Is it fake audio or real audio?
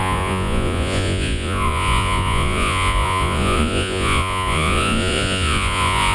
fake